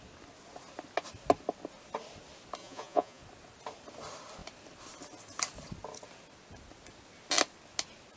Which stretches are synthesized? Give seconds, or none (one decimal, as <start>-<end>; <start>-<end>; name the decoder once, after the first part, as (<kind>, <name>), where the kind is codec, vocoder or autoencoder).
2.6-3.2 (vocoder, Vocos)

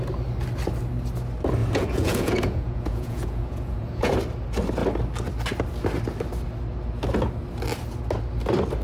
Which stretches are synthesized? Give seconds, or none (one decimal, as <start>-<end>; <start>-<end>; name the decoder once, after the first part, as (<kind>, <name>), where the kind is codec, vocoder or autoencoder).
1.6-4.1 (vocoder, Vocos)

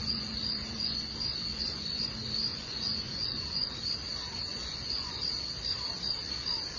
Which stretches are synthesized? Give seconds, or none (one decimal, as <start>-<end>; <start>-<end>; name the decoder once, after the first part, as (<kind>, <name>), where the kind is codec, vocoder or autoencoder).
0.0-1.1 (vocoder, Vocos); 1.5-2.0; 2.5-3.7; 4.5-5.1